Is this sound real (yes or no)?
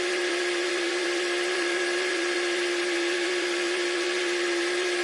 no